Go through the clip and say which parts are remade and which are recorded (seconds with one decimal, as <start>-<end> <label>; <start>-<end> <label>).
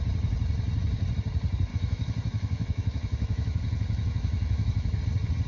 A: 0.0-1.7 recorded; 1.7-5.0 remade; 5.0-5.5 recorded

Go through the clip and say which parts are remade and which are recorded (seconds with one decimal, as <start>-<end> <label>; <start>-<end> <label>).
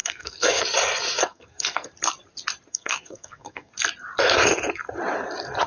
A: 0.0-0.6 remade; 0.6-1.2 recorded; 1.2-1.9 remade; 1.9-2.7 recorded; 2.7-3.7 remade; 3.7-5.7 recorded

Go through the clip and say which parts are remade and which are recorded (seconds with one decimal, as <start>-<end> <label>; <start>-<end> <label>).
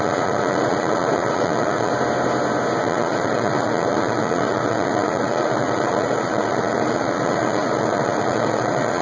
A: 0.0-1.9 remade; 1.9-2.8 recorded; 2.8-9.0 remade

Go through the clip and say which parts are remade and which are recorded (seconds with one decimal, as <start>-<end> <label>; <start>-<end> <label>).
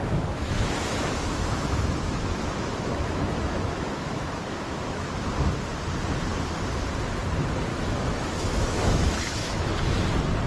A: 0.0-5.1 remade; 5.1-7.7 recorded; 7.7-9.7 remade; 9.7-10.5 recorded